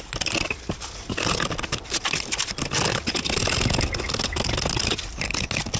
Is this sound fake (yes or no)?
no